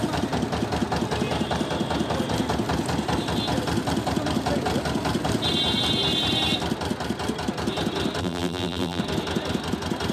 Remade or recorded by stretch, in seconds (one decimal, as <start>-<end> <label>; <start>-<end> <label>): 0.0-8.2 recorded; 8.2-9.0 remade; 9.0-10.1 recorded